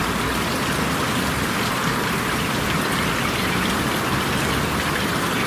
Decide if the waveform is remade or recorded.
recorded